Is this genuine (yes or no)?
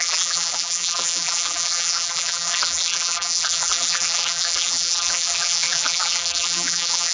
no